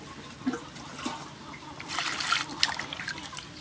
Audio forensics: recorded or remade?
recorded